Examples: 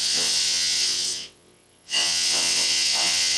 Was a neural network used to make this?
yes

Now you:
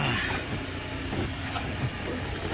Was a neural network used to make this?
no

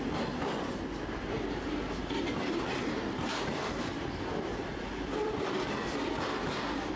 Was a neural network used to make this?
no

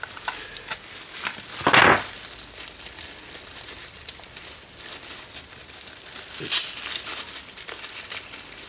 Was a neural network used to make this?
no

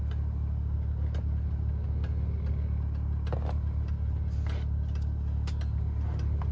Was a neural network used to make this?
no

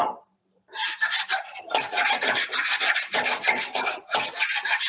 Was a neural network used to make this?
yes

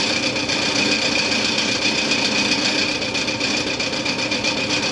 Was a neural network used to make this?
yes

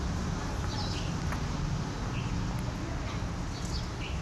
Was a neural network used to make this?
no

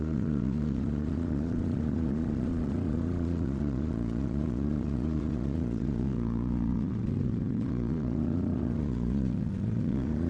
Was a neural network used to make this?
yes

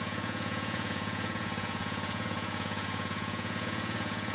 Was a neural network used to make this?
yes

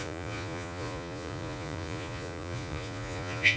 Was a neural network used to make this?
yes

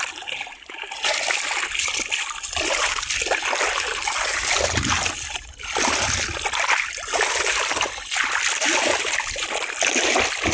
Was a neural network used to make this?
no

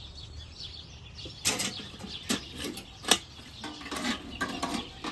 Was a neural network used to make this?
no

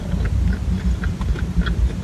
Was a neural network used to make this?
no